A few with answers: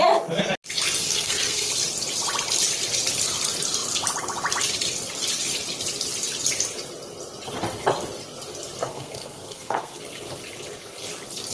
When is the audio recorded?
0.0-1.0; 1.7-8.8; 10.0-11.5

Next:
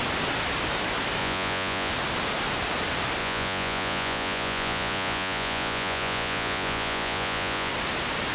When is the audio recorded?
0.0-1.2; 1.9-3.2; 7.7-8.3